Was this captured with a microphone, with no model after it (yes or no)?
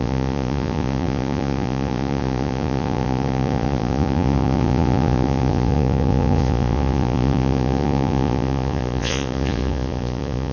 no